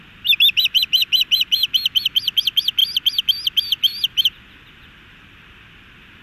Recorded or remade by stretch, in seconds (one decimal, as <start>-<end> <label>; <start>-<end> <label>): 0.0-6.2 recorded